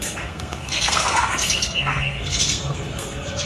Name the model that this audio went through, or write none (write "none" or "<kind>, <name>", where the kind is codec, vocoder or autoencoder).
codec, SNAC